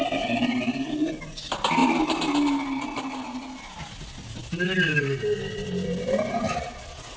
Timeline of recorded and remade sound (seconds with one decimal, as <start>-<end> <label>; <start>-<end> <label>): 0.0-7.2 recorded